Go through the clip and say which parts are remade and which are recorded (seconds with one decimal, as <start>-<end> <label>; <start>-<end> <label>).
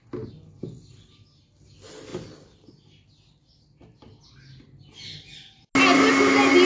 0.0-6.6 recorded